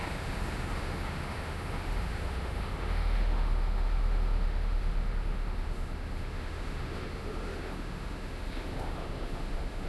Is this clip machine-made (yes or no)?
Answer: yes